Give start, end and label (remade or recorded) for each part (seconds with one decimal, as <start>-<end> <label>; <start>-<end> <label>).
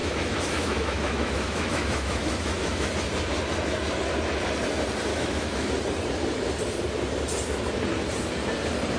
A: 0.0-2.9 remade; 2.9-5.1 recorded; 5.1-5.7 remade; 5.7-9.0 recorded